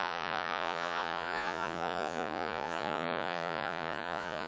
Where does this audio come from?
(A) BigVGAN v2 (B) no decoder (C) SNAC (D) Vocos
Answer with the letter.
D